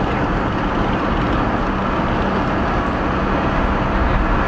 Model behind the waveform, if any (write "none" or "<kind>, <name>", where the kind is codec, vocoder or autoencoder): none